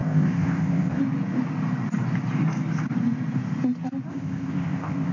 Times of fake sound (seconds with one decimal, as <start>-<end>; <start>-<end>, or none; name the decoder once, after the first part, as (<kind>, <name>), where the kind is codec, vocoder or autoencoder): 0.0-1.0 (codec, ZipCodec); 4.1-5.1